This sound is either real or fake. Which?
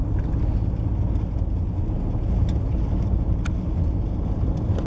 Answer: real